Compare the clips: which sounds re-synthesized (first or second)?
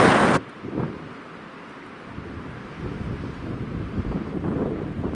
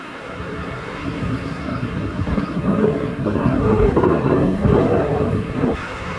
second